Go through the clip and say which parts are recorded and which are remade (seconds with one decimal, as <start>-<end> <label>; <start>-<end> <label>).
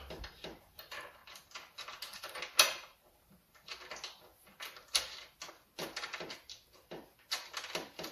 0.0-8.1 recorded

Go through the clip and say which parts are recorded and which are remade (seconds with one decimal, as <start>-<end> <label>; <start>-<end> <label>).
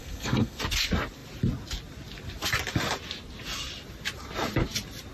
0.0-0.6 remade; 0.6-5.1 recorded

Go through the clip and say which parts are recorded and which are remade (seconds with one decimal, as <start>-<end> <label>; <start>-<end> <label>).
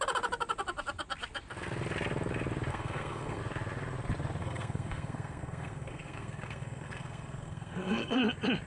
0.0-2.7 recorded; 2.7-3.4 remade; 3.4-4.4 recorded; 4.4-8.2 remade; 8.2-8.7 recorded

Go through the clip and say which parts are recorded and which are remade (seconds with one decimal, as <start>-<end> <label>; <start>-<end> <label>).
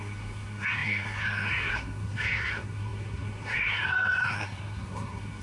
0.0-5.4 remade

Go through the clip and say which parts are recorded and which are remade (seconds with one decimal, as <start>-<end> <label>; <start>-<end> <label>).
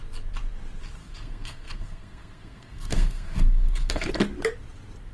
0.0-1.0 recorded; 1.0-4.1 remade; 4.1-5.1 recorded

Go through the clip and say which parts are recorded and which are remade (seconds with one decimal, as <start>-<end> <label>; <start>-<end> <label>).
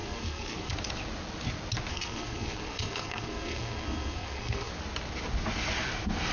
0.0-0.7 remade; 0.7-1.9 recorded; 1.9-4.7 remade; 4.7-6.3 recorded